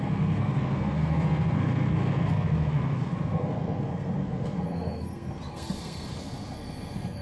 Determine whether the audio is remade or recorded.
remade